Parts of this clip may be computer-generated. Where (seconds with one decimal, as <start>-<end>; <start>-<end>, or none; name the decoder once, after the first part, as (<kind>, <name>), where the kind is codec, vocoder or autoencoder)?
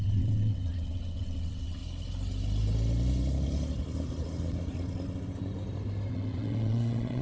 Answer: 0.0-1.8 (vocoder, WaveNeXt); 6.1-7.2